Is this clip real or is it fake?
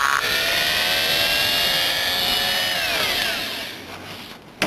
real